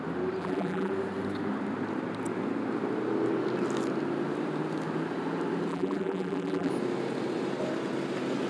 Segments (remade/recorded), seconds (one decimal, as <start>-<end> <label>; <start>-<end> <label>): 0.0-0.4 recorded; 0.4-0.9 remade; 0.9-5.7 recorded; 5.7-6.7 remade; 6.7-8.5 recorded

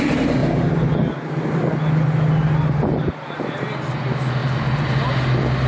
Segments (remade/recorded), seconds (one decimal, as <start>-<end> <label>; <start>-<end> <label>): 0.0-5.7 recorded

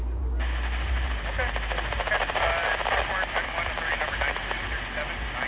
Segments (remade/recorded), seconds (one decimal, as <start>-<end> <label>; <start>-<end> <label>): 0.0-2.2 recorded; 2.2-4.3 remade; 4.3-5.5 recorded

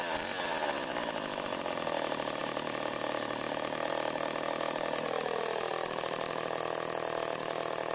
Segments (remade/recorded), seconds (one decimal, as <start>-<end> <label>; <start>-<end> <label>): 0.0-5.7 recorded; 5.7-6.3 remade; 6.3-7.9 recorded

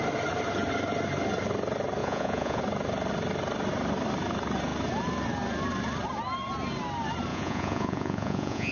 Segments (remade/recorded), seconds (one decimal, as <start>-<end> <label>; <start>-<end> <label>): 0.0-2.0 recorded; 2.0-2.6 remade; 2.6-7.3 recorded; 7.3-8.7 remade

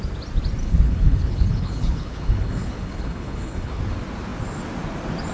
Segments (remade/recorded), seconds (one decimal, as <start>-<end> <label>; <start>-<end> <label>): 0.0-0.6 recorded; 0.6-3.8 remade; 3.8-5.3 recorded

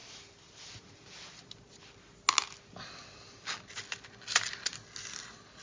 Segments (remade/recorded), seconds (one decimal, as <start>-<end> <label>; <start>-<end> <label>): 0.0-5.6 recorded

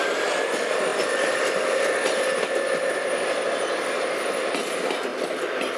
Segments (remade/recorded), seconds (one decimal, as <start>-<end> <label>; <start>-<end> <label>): 0.0-5.8 recorded